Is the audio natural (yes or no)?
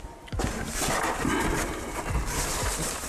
yes